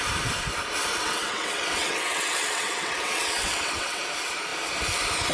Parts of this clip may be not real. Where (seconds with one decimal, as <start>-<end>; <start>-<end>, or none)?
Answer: 0.9-4.0